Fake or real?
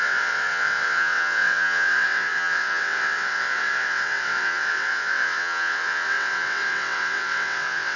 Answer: fake